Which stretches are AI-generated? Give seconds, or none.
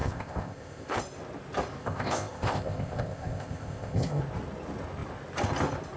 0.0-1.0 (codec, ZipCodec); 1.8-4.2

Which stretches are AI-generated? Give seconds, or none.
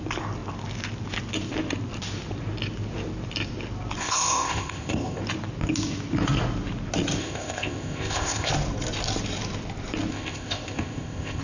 4.0-5.2 (codec, ZipCodec); 7.2-8.5; 10.1-11.4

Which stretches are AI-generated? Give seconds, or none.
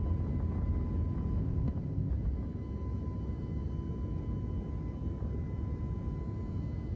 1.4-2.1 (codec, ZipCodec)